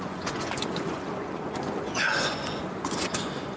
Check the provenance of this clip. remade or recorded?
remade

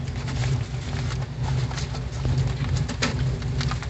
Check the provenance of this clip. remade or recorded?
recorded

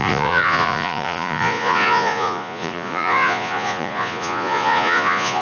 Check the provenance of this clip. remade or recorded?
remade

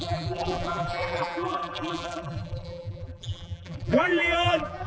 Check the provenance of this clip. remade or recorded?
remade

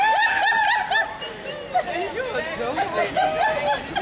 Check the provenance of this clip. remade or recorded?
recorded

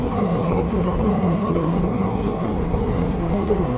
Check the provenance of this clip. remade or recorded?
remade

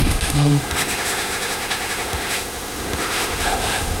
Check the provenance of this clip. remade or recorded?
remade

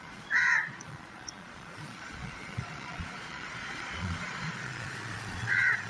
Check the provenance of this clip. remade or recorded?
remade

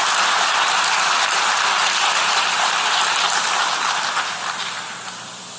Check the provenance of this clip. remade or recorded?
recorded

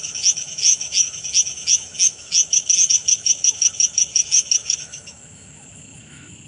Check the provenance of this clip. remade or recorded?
remade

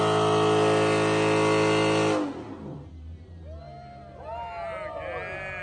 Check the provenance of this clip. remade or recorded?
recorded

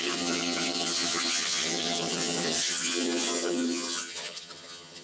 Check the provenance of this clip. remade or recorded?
remade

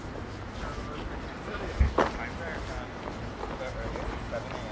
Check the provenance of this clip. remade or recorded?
recorded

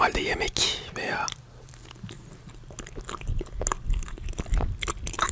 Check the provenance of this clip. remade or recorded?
recorded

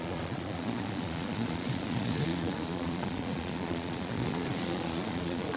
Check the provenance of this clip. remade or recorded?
remade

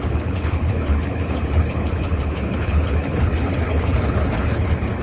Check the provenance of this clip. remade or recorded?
remade